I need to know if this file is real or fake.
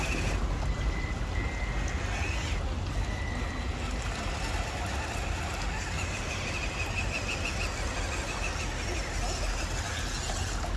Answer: real